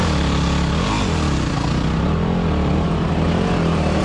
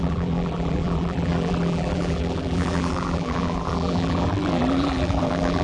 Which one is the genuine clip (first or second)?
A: first